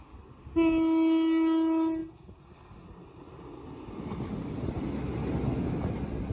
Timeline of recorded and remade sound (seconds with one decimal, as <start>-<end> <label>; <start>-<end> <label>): 0.0-6.3 recorded